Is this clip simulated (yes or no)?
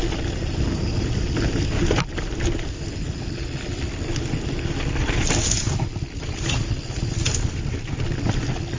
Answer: no